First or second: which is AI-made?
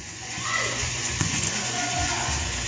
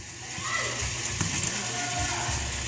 first